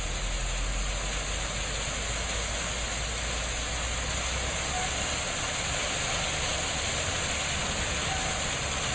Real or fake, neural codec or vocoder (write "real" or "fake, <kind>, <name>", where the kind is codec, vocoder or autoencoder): real